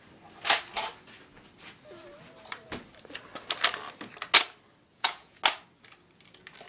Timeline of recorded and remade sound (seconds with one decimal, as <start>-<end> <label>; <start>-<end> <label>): 0.0-4.9 recorded; 4.9-5.4 remade; 5.4-6.7 recorded

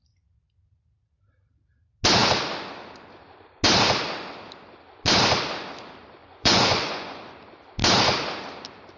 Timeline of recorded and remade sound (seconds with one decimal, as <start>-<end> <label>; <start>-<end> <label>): 0.0-6.2 recorded; 6.2-7.2 remade; 7.2-9.0 recorded

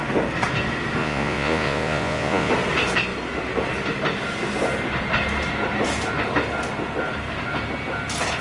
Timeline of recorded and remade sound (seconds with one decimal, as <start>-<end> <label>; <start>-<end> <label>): 0.0-1.0 recorded; 1.0-2.5 remade; 2.5-8.4 recorded

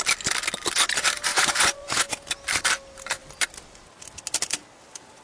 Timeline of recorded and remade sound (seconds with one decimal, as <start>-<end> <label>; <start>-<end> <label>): 0.0-1.3 recorded; 1.3-2.1 remade; 2.1-5.2 recorded

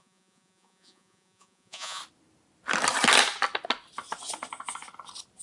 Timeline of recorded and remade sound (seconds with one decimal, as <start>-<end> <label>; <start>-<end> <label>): 0.0-2.0 remade; 2.0-5.4 recorded

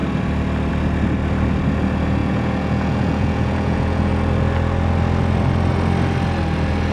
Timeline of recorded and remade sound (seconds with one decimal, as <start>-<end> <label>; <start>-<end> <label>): 0.0-2.2 recorded; 2.2-4.1 remade; 4.1-6.9 recorded

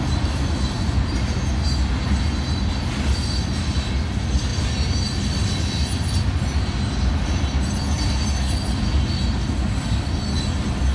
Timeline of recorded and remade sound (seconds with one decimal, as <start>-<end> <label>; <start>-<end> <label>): 0.0-10.9 recorded